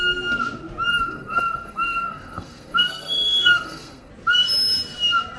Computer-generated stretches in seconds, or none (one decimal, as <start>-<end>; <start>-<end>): 0.9-4.1